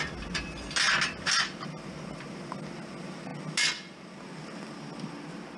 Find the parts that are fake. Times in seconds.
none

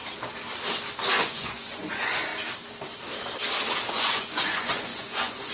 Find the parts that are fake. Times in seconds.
1.1-2.3 (vocoder, Vocos); 3.9-5.5

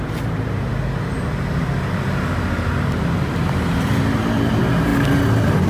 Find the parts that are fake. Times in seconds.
0.0-0.7 (vocoder, BigVGAN v2); 4.0-4.9

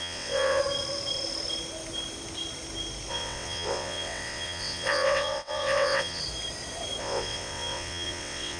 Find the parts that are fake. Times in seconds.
0.0-0.6 (vocoder, WaveNeXt); 3.1-6.2; 7.0-8.6

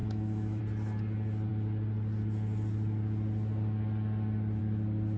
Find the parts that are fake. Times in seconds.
0.0-0.6 (autoencoder, DAC-VAE)

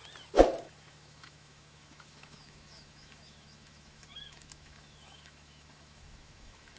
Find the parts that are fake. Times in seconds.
0.6-6.8 (autoencoder, DAC-VAE)

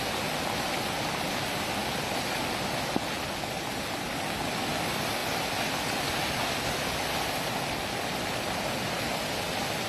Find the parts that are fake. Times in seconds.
none

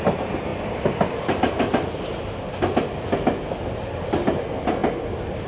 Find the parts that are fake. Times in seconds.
none